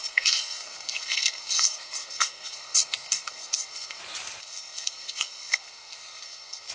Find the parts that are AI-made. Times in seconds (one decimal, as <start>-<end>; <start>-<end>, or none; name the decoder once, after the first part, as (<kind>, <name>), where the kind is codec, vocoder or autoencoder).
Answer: 0.0-4.0 (codec, SNAC); 4.4-6.7